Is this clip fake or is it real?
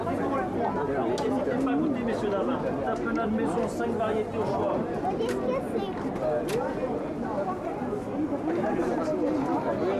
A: real